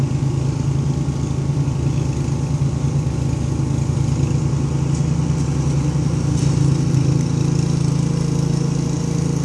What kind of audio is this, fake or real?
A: real